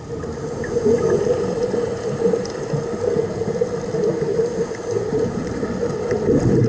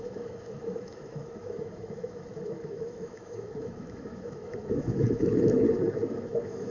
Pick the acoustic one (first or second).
first